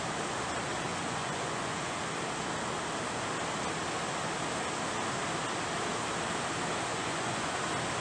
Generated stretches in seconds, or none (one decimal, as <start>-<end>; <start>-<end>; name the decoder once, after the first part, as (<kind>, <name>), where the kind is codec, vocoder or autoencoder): 0.9-2.0 (vocoder, Vocos); 6.9-7.6